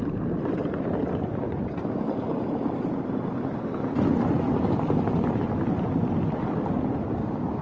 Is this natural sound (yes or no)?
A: yes